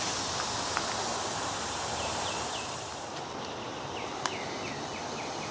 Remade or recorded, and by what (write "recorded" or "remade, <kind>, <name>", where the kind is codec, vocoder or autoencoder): recorded